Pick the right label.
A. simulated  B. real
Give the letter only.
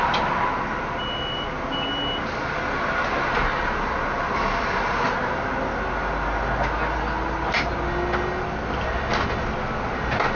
B